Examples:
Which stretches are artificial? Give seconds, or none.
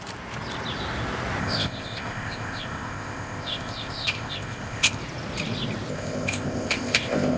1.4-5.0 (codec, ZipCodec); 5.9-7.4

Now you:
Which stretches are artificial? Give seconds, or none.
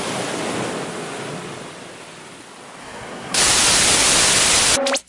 2.8-3.4 (codec, SNAC)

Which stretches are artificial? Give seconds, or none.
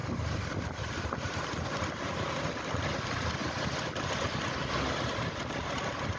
none